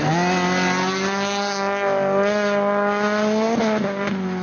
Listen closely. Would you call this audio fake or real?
real